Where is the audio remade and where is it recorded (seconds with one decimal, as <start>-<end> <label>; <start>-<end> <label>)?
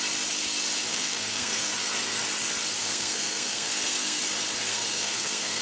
0.0-0.9 recorded; 0.9-1.7 remade; 1.7-2.8 recorded; 2.8-4.2 remade; 4.2-4.7 recorded; 4.7-5.6 remade